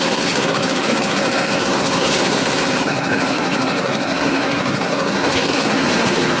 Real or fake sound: fake